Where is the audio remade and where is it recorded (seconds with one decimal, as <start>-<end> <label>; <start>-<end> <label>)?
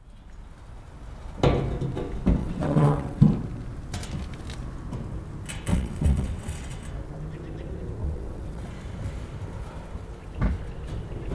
0.0-2.4 recorded; 2.4-3.2 remade; 3.2-5.7 recorded; 5.7-6.8 remade; 6.8-8.0 recorded; 8.0-8.7 remade; 8.7-11.3 recorded